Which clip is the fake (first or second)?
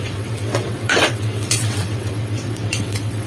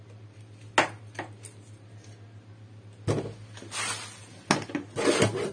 first